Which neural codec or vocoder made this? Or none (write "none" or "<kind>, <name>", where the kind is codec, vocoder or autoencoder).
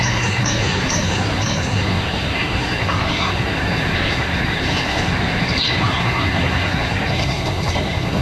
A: codec, SNAC